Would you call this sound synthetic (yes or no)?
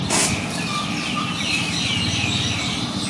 no